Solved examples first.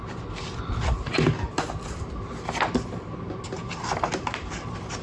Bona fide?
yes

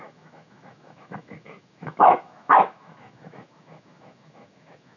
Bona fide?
no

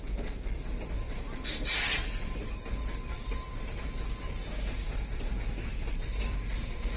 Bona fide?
yes